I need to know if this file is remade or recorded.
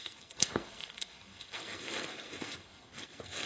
remade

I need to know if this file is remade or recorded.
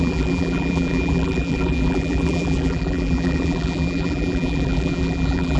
remade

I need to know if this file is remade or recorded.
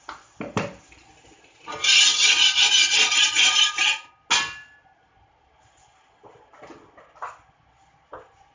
recorded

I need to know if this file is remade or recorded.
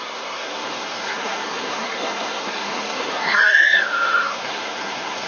remade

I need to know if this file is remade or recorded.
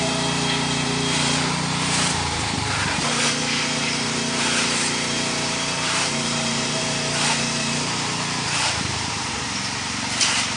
remade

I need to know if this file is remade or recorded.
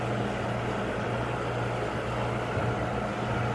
recorded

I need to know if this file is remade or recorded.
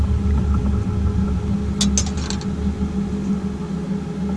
recorded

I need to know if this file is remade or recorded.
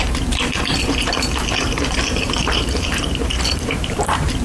remade